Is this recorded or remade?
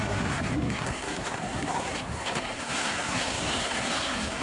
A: remade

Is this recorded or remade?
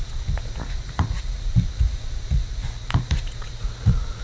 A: remade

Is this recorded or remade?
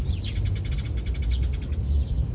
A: recorded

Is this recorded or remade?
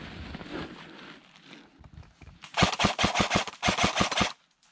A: recorded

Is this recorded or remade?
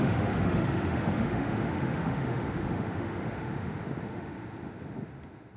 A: remade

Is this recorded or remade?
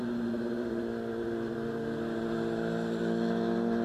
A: recorded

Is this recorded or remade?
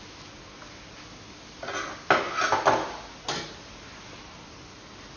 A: recorded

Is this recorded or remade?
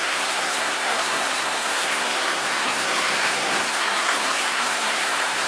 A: remade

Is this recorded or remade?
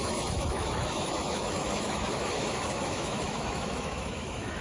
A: remade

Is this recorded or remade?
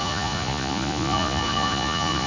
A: remade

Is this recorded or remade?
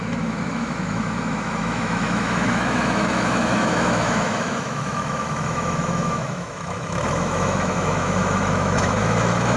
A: remade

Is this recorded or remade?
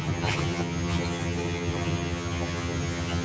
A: remade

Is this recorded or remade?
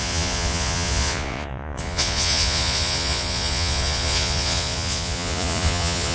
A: remade